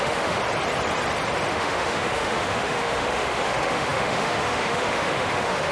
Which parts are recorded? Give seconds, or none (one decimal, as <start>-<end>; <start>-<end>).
0.4-1.5